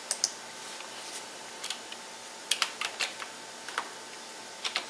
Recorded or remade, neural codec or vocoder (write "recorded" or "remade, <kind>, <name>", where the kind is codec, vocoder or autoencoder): recorded